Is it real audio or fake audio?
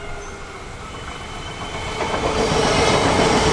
real